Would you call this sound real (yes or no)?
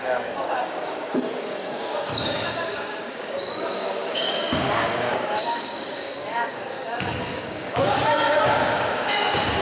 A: no